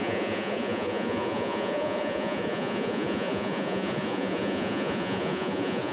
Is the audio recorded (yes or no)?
no